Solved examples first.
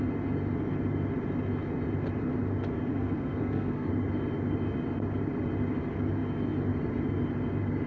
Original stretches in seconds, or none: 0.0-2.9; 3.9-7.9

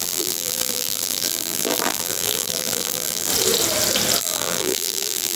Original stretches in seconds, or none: 3.3-4.2

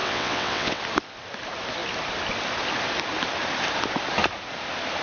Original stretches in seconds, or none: 0.8-5.0